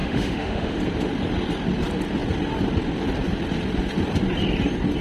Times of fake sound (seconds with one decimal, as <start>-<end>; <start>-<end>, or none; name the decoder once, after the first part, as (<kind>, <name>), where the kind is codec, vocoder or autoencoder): 0.0-0.8 (autoencoder, DAC-VAE)